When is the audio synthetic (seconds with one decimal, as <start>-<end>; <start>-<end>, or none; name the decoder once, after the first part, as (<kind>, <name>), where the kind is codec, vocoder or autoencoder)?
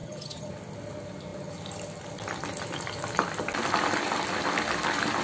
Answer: 0.0-0.5 (vocoder, HiFi-GAN)